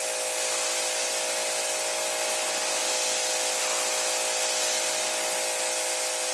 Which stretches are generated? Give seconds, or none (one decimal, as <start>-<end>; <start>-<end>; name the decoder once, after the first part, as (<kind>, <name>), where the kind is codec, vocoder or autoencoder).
none